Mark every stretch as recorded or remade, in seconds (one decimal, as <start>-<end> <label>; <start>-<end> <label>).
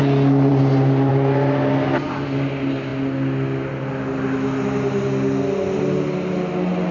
0.0-6.9 recorded